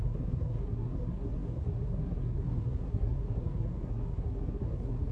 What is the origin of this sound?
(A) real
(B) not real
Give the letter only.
B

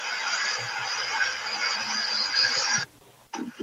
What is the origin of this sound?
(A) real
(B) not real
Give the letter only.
A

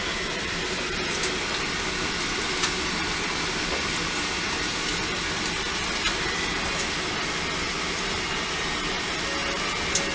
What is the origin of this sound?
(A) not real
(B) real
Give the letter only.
B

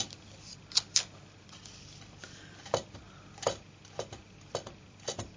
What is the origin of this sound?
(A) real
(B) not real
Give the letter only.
A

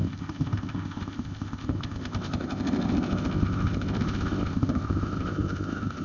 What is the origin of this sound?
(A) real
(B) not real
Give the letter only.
B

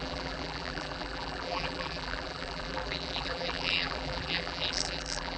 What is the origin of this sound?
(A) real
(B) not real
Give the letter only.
B